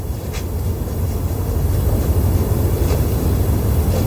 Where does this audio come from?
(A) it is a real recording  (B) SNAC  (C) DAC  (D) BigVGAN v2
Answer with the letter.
A